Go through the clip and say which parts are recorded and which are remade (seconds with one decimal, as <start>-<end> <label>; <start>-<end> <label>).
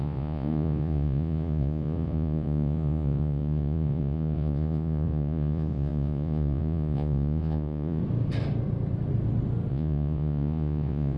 0.0-8.0 remade; 8.0-9.7 recorded; 9.7-11.2 remade